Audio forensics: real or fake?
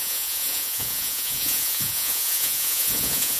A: fake